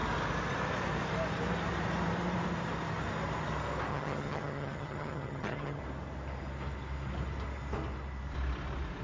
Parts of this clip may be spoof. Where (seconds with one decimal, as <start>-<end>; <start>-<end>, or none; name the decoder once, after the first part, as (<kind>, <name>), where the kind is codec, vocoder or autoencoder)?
3.9-5.8 (vocoder, HiFi-GAN)